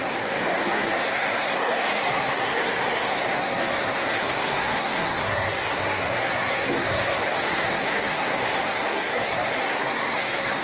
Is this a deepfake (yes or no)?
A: yes